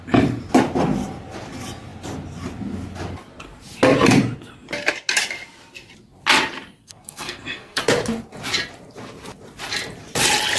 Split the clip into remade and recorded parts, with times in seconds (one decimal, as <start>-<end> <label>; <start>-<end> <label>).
0.0-6.8 recorded; 6.8-7.8 remade; 7.8-10.6 recorded